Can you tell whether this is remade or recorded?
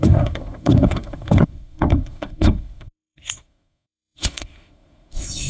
remade